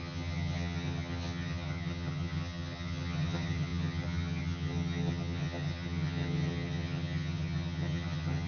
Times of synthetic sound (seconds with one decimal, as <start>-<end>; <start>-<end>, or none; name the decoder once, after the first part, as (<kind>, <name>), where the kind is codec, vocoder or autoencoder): 0.0-8.5 (vocoder, HiFi-GAN)